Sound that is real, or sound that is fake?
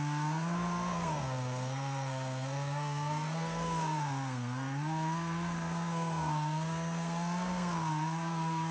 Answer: fake